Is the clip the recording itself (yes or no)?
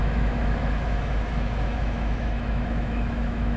no